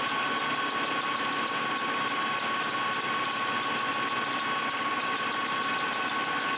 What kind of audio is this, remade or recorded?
recorded